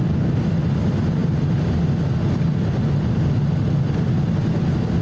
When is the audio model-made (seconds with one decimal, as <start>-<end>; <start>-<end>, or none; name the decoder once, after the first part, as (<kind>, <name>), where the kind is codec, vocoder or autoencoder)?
none